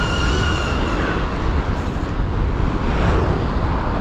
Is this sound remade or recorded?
recorded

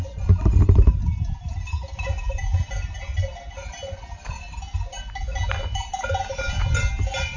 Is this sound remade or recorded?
recorded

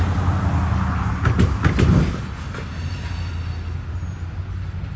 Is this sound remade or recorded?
recorded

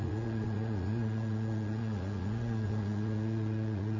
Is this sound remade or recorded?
remade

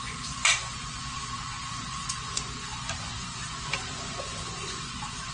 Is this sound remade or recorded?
remade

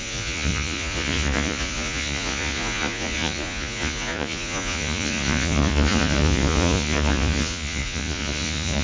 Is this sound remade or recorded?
remade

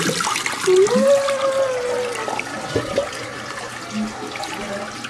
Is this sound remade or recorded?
recorded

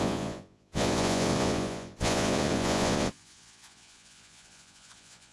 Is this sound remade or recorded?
remade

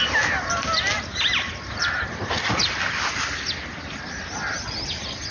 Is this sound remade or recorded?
recorded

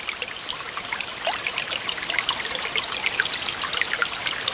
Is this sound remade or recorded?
recorded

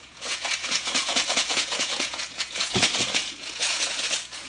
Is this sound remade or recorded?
remade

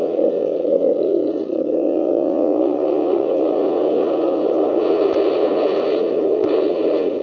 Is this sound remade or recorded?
remade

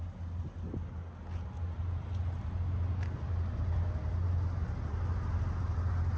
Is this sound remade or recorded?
recorded